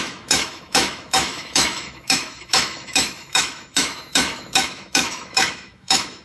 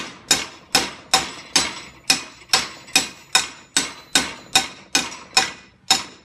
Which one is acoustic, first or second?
second